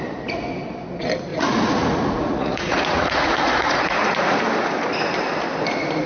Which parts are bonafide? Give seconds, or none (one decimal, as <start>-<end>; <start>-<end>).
0.0-1.3; 4.4-6.1